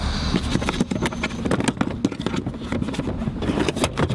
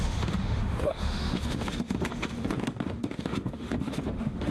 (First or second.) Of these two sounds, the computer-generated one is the second